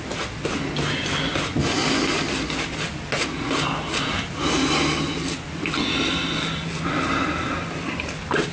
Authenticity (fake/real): real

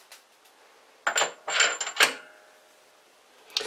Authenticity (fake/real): real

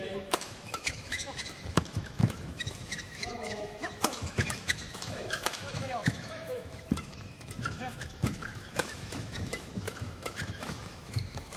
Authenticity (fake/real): fake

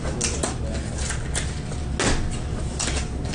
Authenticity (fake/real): real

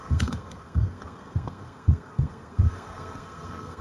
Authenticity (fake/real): fake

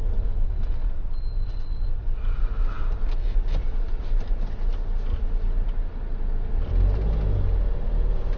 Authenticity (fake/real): real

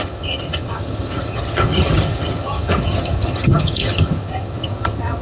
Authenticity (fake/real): fake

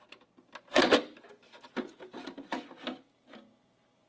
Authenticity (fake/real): real